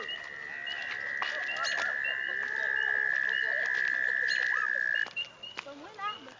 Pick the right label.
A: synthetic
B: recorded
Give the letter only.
B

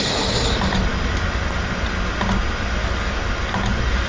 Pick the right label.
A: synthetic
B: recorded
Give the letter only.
B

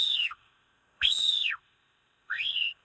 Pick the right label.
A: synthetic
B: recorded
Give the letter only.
A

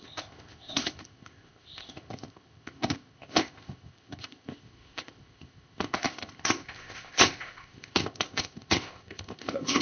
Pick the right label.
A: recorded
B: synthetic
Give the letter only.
B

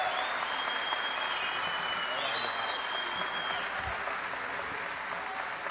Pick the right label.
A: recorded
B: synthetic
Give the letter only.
A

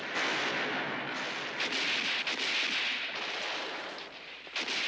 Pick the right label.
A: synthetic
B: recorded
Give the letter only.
B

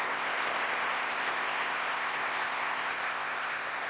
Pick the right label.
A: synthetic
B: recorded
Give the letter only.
A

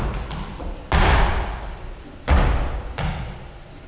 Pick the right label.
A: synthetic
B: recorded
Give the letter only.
B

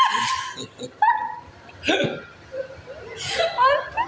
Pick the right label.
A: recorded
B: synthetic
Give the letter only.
A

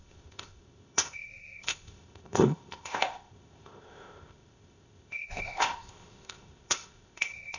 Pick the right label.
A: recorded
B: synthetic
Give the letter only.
B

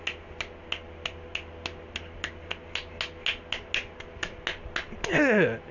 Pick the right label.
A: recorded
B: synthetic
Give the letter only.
A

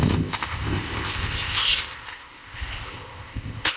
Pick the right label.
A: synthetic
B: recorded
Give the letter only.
A